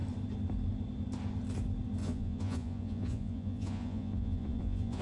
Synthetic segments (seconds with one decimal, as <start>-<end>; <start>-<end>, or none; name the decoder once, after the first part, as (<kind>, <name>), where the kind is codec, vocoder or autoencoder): 2.0-5.0 (vocoder, Vocos)